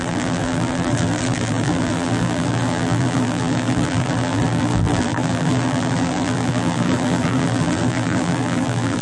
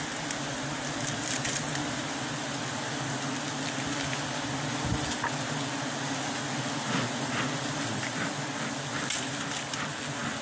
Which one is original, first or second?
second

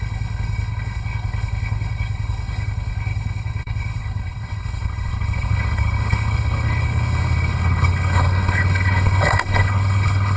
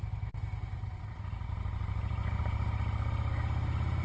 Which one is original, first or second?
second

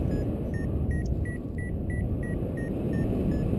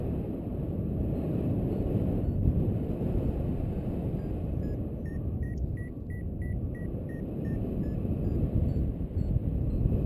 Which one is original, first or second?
first